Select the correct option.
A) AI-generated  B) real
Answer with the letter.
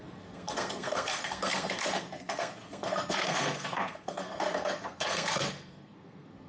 A